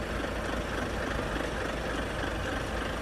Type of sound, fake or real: real